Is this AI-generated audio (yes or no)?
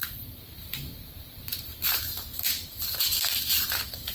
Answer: yes